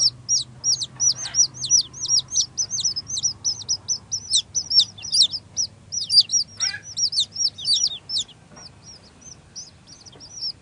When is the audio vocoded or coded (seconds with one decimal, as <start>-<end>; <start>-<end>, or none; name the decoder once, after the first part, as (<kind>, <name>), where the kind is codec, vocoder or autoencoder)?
none